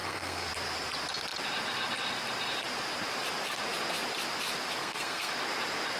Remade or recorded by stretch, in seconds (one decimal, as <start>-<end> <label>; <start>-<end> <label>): 0.0-0.5 remade; 0.5-4.8 recorded; 4.8-5.3 remade; 5.3-6.0 recorded